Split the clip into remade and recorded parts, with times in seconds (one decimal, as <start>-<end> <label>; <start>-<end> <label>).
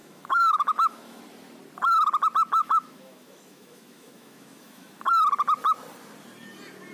0.0-1.2 remade; 1.2-2.6 recorded; 2.6-5.1 remade; 5.1-6.9 recorded